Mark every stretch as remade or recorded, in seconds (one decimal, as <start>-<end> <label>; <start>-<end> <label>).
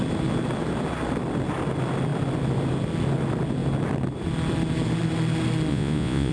0.0-5.7 recorded; 5.7-6.3 remade